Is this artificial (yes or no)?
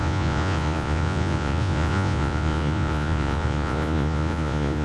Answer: yes